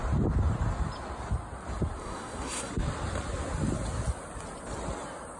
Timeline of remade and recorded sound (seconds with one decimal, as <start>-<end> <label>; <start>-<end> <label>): 0.0-2.0 recorded; 2.0-2.7 remade; 2.7-5.4 recorded

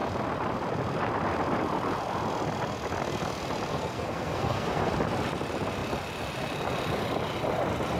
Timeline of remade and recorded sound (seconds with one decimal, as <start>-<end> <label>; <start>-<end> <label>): 0.0-3.7 recorded; 3.7-4.9 remade; 4.9-8.0 recorded

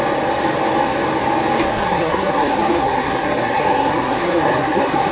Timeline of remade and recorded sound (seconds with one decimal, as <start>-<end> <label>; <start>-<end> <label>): 0.0-1.7 recorded; 1.7-5.1 remade

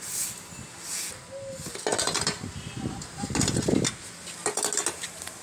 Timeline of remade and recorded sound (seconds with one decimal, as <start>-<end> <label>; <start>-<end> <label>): 0.0-5.4 recorded

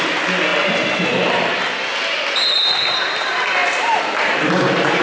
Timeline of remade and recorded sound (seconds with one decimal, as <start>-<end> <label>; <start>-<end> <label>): 0.0-5.0 recorded

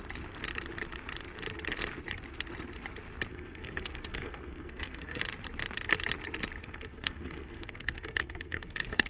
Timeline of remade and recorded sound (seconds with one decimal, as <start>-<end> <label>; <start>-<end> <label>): 0.0-3.3 recorded; 3.3-5.2 remade; 5.2-6.6 recorded; 6.6-9.1 remade